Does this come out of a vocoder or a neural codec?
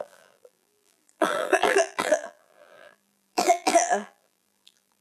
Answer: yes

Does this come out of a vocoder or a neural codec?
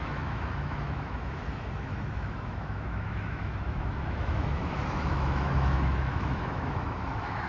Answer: yes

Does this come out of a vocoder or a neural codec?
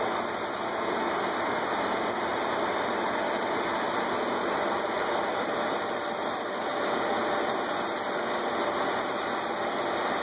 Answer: no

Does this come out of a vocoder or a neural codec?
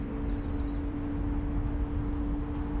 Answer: no